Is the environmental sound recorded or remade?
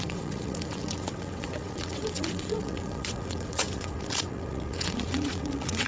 remade